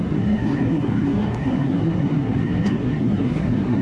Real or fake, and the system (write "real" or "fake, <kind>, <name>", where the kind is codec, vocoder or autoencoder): fake, codec, SNAC